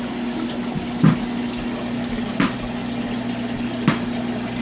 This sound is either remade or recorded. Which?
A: recorded